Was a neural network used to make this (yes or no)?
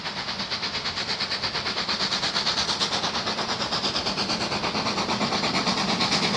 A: no